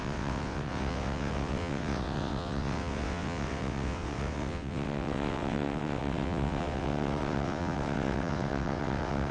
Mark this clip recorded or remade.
remade